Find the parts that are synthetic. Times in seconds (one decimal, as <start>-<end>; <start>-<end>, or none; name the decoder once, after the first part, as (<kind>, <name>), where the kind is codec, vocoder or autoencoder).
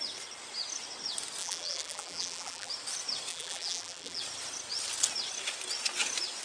1.4-2.7 (vocoder, BigVGAN v2); 3.3-4.2